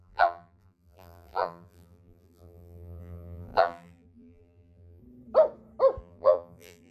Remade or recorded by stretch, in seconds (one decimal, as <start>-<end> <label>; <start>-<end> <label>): 0.0-5.0 remade; 5.0-6.0 recorded; 6.0-6.9 remade